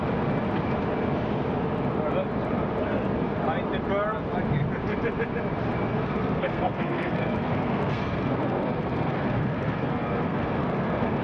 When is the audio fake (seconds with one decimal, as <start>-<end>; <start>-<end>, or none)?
5.9-11.2